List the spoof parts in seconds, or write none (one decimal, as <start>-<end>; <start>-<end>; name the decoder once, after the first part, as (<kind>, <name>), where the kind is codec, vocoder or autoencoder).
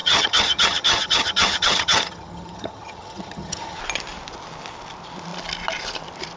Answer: 0.0-3.8 (vocoder, HiFi-GAN)